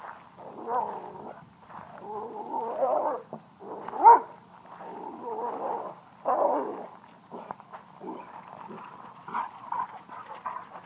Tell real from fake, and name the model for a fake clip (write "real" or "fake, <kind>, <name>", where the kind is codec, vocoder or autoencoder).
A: real